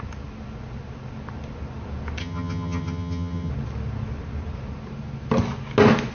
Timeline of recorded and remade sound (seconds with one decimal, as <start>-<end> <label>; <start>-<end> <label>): 0.0-2.2 recorded; 2.2-3.5 remade; 3.5-6.1 recorded